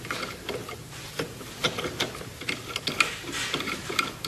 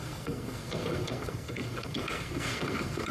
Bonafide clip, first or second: first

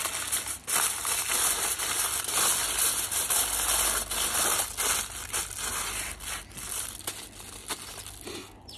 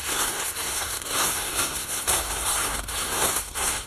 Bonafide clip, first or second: first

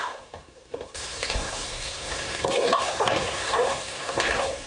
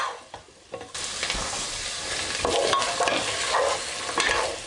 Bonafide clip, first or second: second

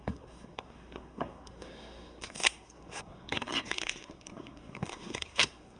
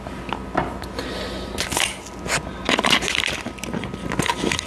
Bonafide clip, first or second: second